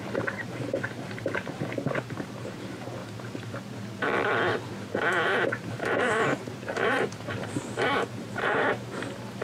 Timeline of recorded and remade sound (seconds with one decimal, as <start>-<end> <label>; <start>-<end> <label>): 0.0-3.0 remade; 3.0-5.5 recorded; 5.5-9.4 remade